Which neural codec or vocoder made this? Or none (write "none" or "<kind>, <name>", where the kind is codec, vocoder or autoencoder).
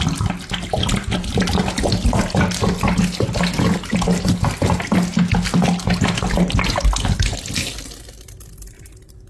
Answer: none